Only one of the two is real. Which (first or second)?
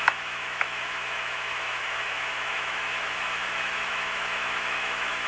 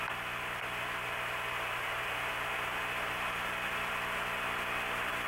second